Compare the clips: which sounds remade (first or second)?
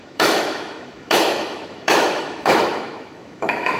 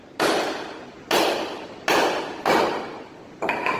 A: first